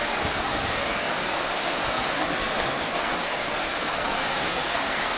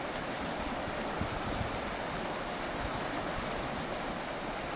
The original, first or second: second